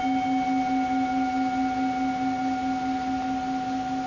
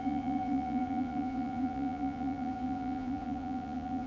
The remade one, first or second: second